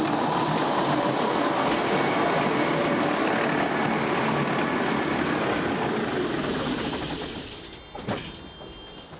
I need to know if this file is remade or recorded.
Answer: recorded